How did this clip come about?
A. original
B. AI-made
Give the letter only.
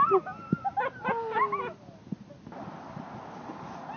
A